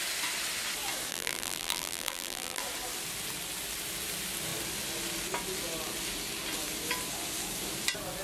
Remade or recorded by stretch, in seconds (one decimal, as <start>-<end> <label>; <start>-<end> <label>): 0.0-1.1 recorded; 1.1-2.6 remade; 2.6-8.2 recorded